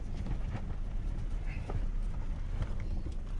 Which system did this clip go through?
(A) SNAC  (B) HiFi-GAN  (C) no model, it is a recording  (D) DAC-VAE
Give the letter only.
C